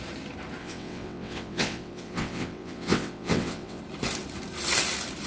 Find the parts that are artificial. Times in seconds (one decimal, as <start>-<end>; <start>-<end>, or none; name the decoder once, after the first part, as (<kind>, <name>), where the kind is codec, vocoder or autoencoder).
0.6-3.8 (vocoder, WaveNeXt)